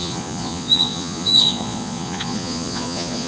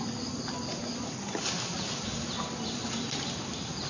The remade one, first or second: first